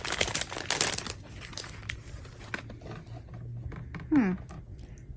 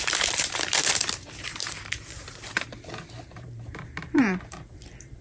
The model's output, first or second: second